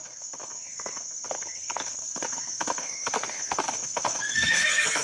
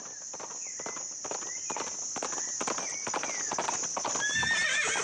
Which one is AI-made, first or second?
first